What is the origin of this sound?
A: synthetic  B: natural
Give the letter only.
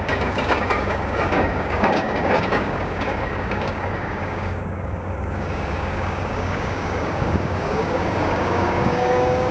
A